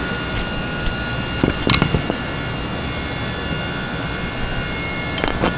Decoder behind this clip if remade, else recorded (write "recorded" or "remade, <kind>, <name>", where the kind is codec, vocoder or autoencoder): recorded